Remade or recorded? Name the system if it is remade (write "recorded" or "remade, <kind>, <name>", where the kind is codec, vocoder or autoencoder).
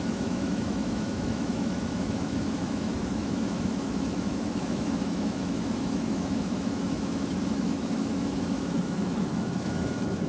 remade, autoencoder, DAC-VAE